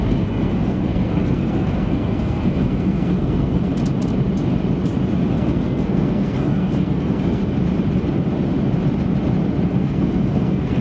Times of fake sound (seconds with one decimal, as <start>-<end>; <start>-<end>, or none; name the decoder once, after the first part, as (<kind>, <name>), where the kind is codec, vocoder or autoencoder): 0.0-3.7 (codec, SNAC); 5.3-7.4; 9.7-10.8